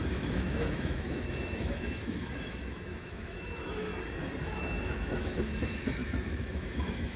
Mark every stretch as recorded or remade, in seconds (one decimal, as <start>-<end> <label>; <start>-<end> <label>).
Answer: 0.0-3.9 remade; 3.9-4.4 recorded; 4.4-7.2 remade